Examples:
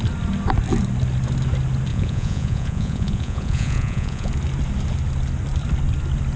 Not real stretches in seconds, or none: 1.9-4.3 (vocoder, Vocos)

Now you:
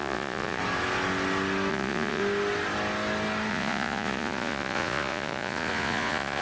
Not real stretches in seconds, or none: 0.0-0.6 (vocoder, Vocos); 1.7-2.2; 3.5-6.4

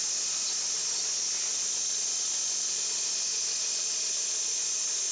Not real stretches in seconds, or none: none